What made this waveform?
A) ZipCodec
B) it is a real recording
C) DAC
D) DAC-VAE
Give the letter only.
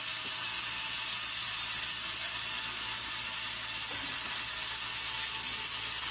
B